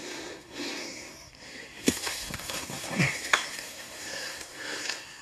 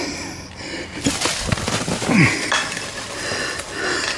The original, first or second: second